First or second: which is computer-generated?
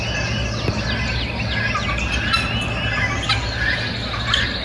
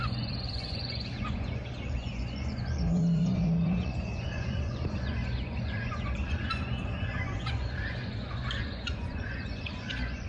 second